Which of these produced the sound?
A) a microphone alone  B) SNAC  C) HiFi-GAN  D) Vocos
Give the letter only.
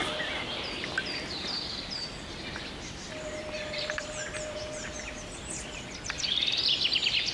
A